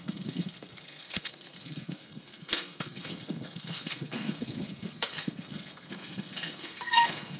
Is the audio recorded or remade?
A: remade